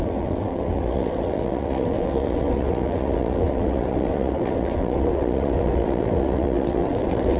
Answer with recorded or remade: remade